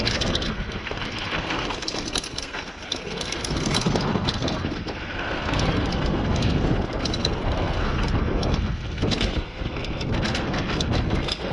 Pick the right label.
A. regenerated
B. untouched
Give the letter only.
A